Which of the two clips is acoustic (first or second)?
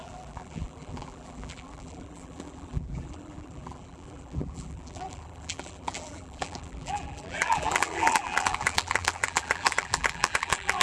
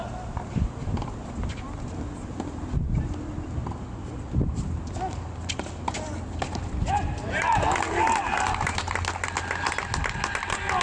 second